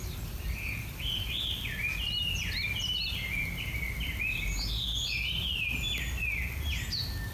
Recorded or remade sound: recorded